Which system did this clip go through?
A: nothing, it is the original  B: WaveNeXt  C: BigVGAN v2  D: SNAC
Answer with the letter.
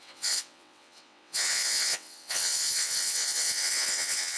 B